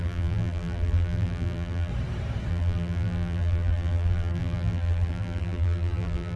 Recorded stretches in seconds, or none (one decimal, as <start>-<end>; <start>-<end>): 1.9-2.5